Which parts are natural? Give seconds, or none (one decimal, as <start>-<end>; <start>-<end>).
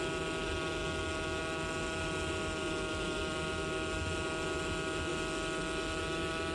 0.0-6.5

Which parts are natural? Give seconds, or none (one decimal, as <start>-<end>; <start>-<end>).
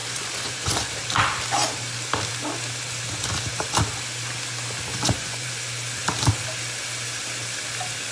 0.9-4.9; 5.6-8.1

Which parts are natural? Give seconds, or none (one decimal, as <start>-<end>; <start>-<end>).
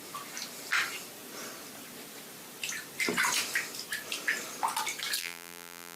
0.0-5.2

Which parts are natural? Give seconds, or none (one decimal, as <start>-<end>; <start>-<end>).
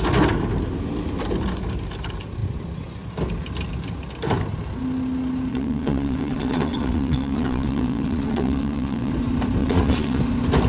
0.0-5.5; 9.1-9.6; 10.2-10.7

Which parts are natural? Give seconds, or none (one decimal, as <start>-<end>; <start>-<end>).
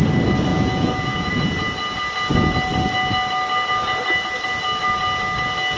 0.0-0.5; 1.3-5.8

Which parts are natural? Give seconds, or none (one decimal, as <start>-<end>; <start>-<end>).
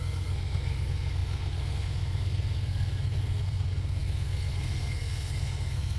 none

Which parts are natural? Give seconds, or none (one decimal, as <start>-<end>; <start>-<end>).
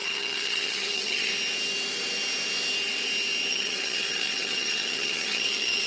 1.3-3.5